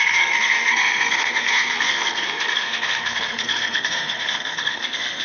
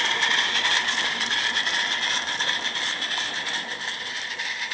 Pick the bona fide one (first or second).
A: second